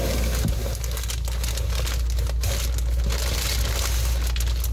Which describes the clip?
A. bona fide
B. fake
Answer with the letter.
A